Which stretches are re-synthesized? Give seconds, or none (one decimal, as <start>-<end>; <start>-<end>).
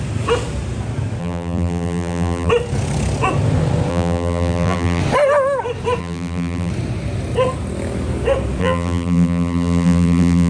1.2-2.5; 3.9-5.0; 6.0-6.7; 8.6-10.5